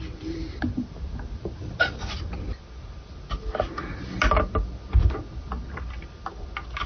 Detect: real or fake real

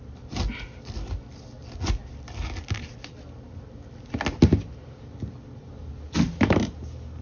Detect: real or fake real